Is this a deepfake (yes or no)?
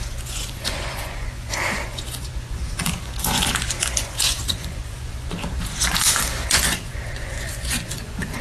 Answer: yes